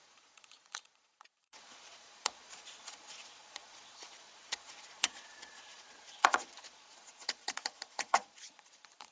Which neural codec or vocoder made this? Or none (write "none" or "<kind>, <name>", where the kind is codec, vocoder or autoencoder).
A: vocoder, Vocos